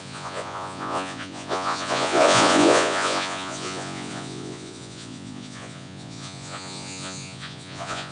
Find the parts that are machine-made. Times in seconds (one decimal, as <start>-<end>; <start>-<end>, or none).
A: 0.0-8.1